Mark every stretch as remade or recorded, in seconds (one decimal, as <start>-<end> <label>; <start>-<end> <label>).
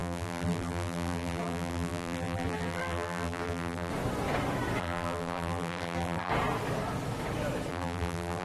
0.0-3.9 remade; 3.9-4.8 recorded; 4.8-6.3 remade; 6.3-7.7 recorded; 7.7-8.4 remade